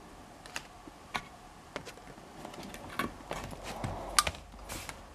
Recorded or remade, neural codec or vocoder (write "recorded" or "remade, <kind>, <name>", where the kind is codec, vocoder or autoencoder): recorded